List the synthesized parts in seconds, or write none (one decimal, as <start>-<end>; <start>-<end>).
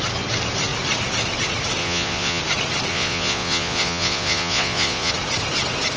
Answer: 1.8-2.4; 2.9-5.1